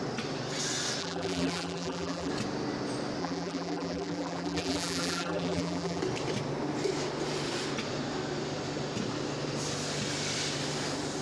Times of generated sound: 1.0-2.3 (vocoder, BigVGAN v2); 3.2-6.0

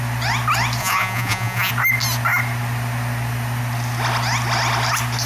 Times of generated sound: 0.8-1.7 (vocoder, Vocos)

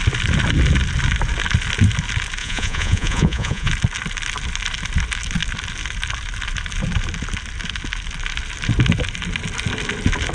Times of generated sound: 2.4-3.7 (vocoder, Vocos)

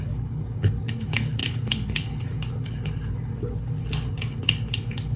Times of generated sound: 0.0-5.2 (codec, HILCodec)

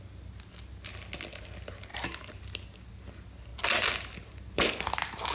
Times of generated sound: none

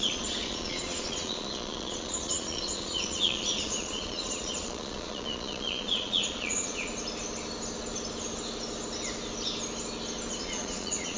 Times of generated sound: 0.0-6.9 (vocoder, Vocos); 10.4-11.2

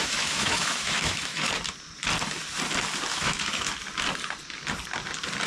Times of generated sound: 0.0-1.5 (autoencoder, DAC-VAE); 3.1-3.7